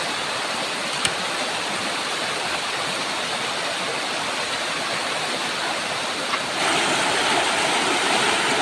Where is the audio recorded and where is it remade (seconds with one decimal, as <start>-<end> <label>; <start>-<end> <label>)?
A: 0.0-8.6 recorded